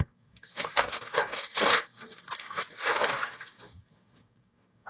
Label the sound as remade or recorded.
remade